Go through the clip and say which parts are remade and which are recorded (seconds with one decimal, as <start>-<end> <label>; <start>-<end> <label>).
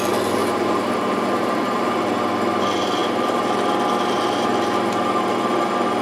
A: 0.0-0.4 recorded; 0.4-1.9 remade; 1.9-6.0 recorded